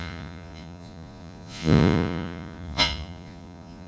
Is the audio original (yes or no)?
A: no